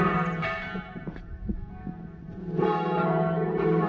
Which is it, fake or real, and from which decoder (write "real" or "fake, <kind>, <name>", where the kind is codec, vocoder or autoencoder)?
fake, vocoder, BigVGAN v2